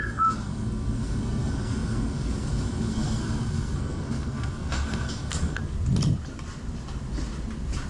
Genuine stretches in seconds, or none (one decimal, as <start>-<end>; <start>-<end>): 5.6-7.9